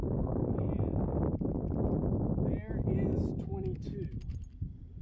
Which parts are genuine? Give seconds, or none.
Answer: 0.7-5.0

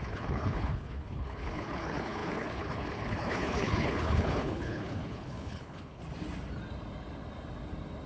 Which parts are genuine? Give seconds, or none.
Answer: 6.0-8.1

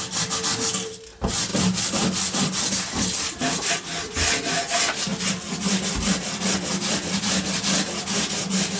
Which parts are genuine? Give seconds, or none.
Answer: 0.0-8.8

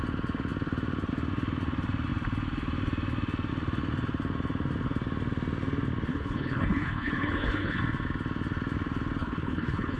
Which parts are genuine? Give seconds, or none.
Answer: 0.0-6.1; 7.8-9.2

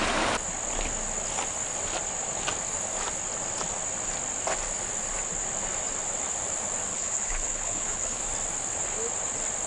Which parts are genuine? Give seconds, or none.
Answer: 0.0-6.9; 8.2-9.7

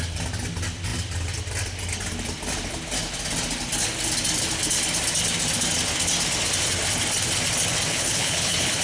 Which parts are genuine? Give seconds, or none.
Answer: 0.0-7.9

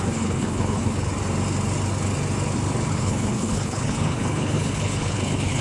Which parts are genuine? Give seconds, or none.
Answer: 1.1-2.9